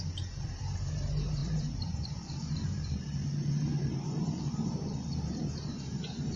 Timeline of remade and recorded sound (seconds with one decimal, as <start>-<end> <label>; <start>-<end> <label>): 0.0-6.4 remade